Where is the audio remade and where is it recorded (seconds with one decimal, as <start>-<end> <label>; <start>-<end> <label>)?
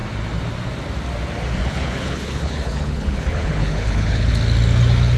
0.0-1.6 recorded; 1.6-4.3 remade; 4.3-5.2 recorded